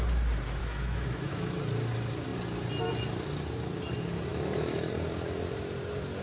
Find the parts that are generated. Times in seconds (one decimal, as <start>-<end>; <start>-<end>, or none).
0.6-1.6; 4.3-4.9